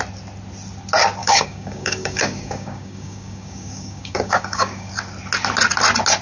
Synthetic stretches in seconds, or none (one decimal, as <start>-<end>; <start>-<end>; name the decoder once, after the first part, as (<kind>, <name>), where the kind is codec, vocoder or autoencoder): 1.2-4.9 (codec, DAC)